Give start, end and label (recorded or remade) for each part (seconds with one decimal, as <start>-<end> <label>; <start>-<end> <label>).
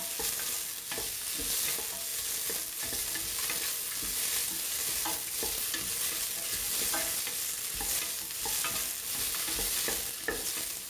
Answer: 0.0-4.4 recorded; 4.4-5.4 remade; 5.4-10.9 recorded